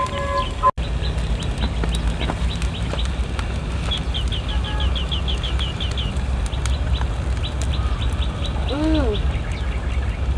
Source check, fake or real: real